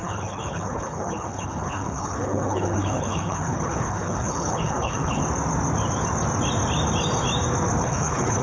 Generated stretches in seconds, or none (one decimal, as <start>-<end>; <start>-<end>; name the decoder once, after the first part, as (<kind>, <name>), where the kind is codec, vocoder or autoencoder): 0.0-5.2 (codec, HILCodec); 7.8-8.4